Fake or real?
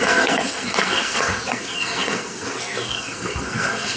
fake